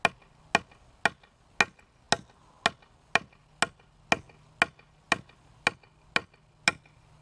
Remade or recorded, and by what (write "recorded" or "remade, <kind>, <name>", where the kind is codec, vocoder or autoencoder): recorded